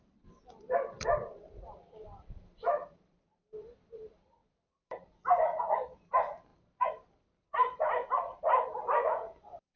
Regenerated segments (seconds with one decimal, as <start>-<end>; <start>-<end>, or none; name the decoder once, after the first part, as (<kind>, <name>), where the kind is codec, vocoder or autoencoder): 0.0-9.8 (vocoder, BigVGAN v2)